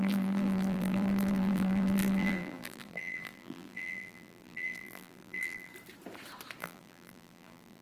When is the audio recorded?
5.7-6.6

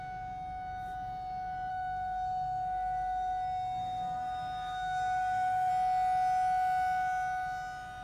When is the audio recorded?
0.0-1.7; 5.7-8.0

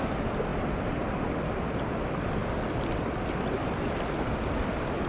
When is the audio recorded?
0.0-5.1

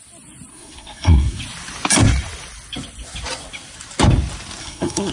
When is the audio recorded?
0.0-0.5; 1.4-4.6

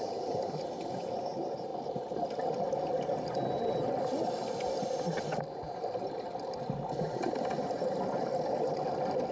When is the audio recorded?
0.0-9.3

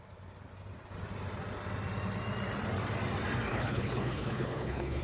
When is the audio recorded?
0.0-3.5